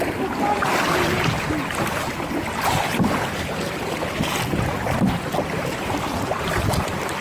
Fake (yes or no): no